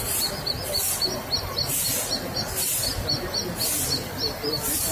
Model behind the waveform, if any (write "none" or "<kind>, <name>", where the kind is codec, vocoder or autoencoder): none